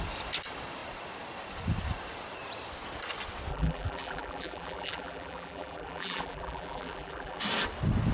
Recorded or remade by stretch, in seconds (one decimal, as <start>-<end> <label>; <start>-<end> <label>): 0.0-3.5 recorded; 3.5-7.4 remade; 7.4-8.1 recorded